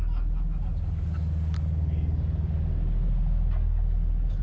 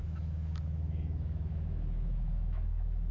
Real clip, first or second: first